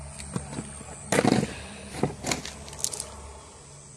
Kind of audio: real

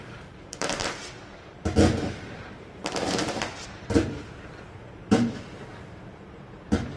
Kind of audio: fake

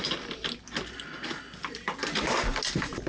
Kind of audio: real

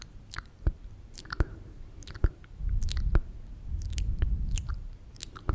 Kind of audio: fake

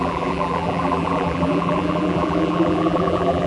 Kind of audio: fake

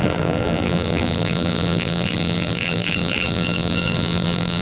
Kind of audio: fake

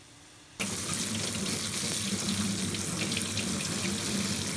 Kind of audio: real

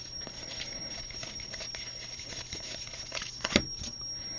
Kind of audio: fake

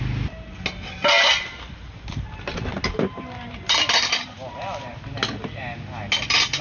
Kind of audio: real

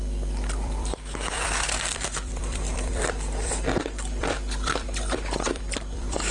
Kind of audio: fake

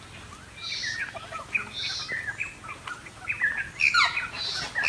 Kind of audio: real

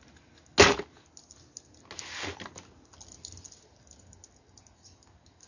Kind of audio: real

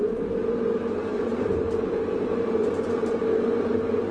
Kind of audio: fake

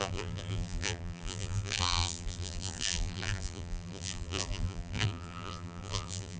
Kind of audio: fake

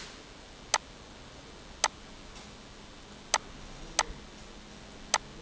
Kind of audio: real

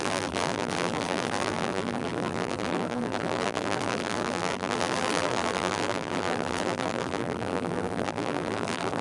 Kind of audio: fake